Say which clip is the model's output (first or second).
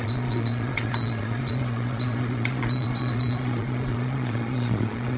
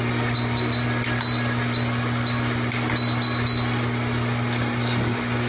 first